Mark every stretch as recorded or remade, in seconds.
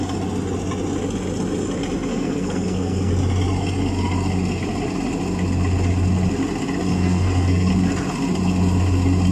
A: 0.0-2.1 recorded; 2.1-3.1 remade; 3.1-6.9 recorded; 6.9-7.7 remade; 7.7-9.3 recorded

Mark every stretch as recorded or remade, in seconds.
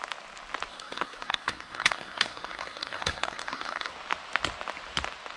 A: 0.0-0.7 recorded; 0.7-3.9 remade; 3.9-5.4 recorded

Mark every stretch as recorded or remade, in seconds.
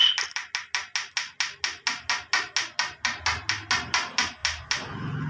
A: 0.0-5.3 recorded